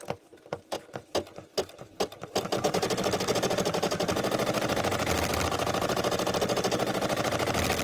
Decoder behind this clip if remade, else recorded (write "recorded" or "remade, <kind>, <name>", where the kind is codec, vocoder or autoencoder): recorded